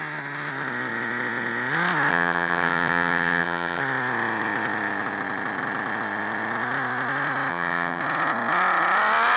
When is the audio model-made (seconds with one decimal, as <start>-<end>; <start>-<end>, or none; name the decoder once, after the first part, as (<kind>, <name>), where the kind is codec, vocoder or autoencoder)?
2.1-3.8 (vocoder, HiFi-GAN); 7.5-8.0